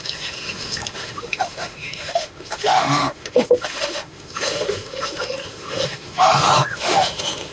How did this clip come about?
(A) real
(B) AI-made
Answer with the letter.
B